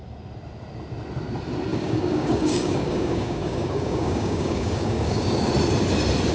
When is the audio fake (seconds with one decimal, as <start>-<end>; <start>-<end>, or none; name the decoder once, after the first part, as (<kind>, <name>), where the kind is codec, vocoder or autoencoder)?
1.7-5.5 (codec, DAC)